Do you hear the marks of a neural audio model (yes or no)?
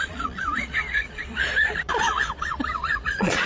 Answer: yes